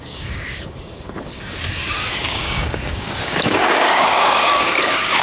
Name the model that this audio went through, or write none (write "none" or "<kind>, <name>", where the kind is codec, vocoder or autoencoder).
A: codec, DAC